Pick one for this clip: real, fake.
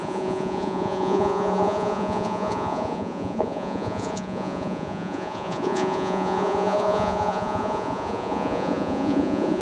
fake